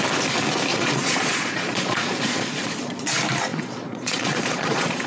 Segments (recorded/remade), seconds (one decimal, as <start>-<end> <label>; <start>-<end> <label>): 0.0-0.7 recorded; 0.7-3.1 remade; 3.1-3.5 recorded; 3.5-5.1 remade